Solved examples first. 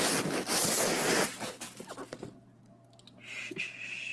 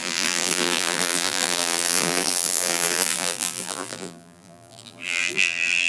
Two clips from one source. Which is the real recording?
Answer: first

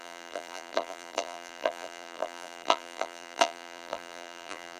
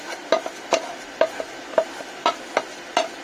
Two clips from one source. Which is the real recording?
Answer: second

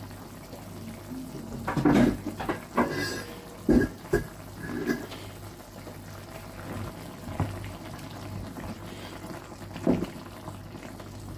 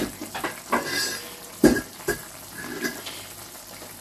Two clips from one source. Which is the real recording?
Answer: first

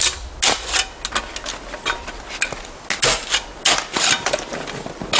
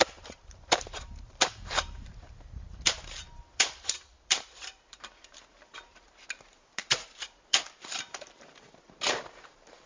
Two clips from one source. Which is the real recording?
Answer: first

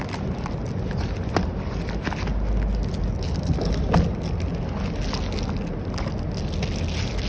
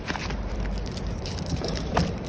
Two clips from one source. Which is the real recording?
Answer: first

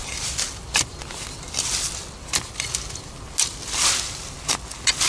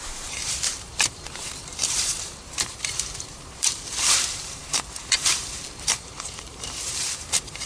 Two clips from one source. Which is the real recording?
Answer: first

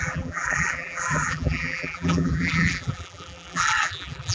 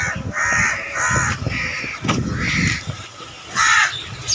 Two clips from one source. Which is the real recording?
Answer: second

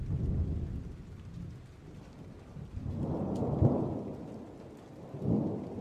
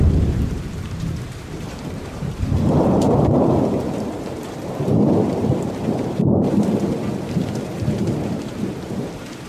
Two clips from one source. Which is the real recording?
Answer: first